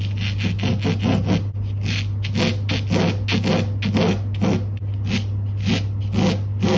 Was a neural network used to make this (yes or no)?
no